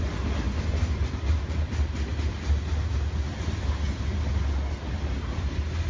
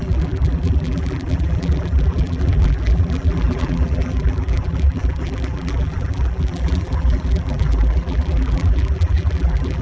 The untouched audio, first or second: first